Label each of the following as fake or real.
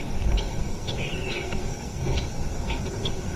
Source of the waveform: fake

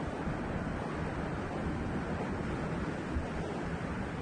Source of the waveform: real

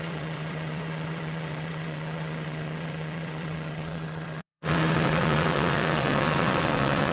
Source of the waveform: fake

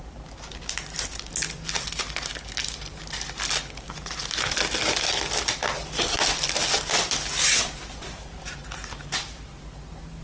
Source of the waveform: real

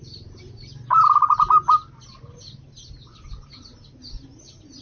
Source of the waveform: real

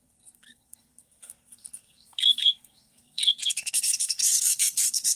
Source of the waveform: fake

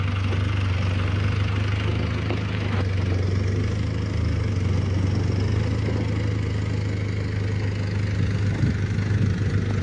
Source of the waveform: real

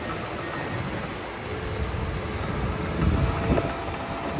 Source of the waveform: real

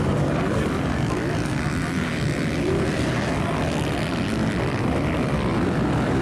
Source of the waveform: real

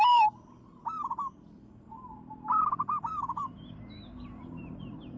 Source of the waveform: fake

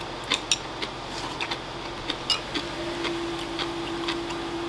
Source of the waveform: real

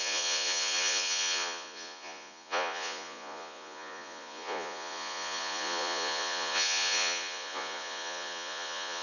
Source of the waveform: fake